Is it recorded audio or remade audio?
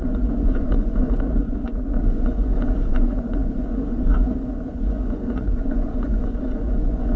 remade